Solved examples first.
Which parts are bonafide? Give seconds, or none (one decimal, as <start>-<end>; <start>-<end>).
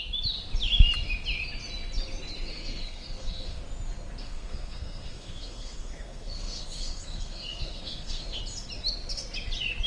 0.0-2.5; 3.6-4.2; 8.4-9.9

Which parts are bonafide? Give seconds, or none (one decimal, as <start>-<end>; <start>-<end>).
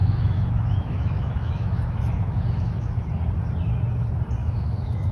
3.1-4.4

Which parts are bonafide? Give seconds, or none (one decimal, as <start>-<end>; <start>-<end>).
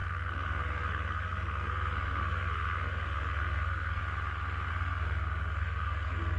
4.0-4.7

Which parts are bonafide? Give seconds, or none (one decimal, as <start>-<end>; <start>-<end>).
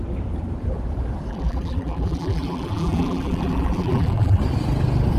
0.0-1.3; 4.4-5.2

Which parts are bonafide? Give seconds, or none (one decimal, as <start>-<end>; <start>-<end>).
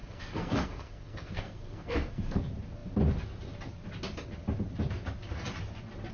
2.4-6.1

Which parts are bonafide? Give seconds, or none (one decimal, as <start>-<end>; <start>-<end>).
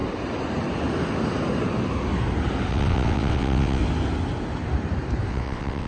0.0-2.7; 3.8-5.3